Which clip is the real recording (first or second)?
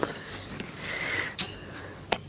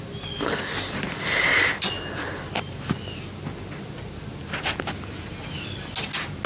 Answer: second